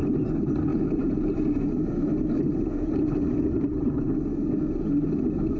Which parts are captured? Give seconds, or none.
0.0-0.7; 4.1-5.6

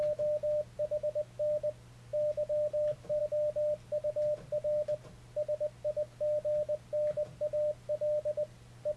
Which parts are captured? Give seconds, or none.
0.0-9.0

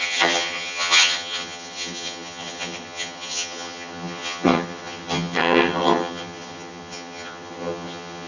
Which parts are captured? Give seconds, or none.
none